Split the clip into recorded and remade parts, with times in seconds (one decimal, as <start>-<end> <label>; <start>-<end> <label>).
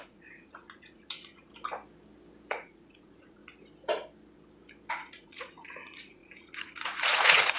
0.0-1.5 remade; 1.5-2.5 recorded; 2.5-3.4 remade; 3.4-4.9 recorded; 4.9-7.6 remade